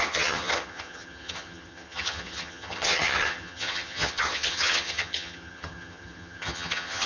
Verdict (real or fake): fake